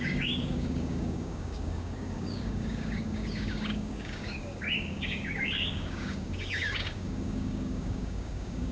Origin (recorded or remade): remade